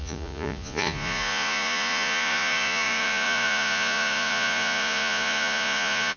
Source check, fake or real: fake